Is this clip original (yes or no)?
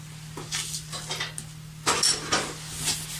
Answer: yes